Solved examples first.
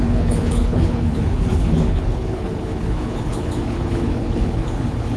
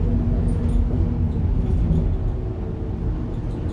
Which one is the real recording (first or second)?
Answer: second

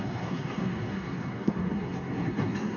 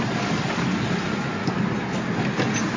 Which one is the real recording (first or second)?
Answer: second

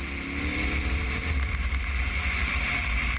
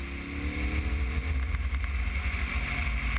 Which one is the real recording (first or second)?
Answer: second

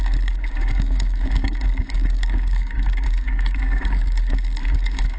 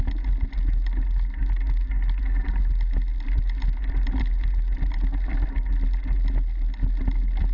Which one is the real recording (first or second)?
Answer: second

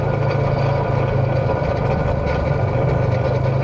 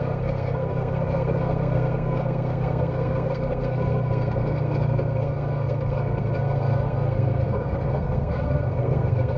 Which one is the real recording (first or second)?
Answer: first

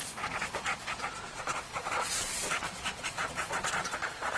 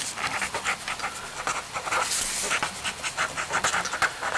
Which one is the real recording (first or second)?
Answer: second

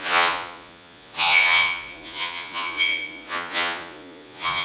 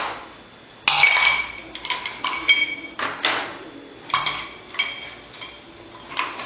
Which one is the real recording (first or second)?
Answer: second